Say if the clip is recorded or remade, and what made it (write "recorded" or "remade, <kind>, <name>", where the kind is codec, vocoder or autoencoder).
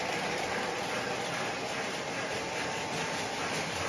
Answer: recorded